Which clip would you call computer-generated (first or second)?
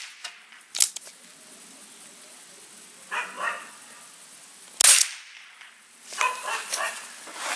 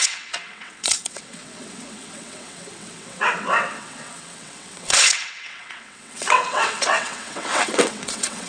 second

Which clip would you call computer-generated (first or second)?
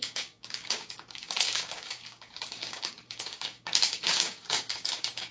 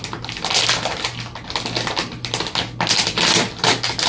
first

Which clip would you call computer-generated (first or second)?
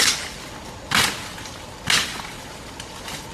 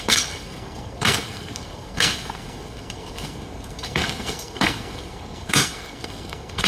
second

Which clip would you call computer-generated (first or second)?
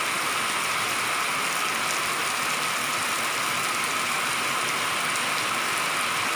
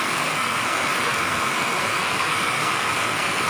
second